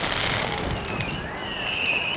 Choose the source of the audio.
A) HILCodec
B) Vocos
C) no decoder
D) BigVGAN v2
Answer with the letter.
C